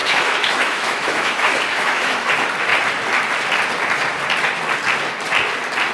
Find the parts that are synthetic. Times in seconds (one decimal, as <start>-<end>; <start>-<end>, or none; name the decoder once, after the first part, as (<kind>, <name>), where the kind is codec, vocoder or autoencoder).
0.0-2.3 (autoencoder, DAC-VAE)